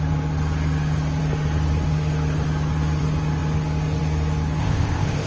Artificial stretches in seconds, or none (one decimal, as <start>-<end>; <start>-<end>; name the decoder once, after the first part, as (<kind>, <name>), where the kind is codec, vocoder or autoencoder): 4.6-5.3 (codec, ZipCodec)